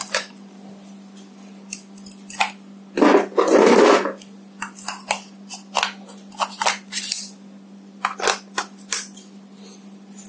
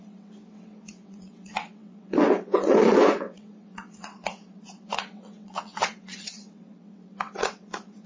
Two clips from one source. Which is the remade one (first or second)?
second